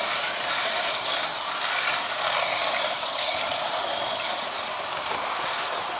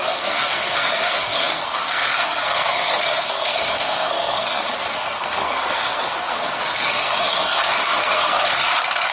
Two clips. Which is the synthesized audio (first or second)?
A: second